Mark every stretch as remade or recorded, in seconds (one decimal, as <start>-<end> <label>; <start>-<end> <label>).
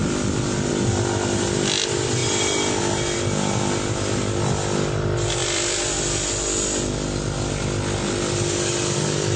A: 0.0-5.4 recorded; 5.4-6.0 remade; 6.0-9.4 recorded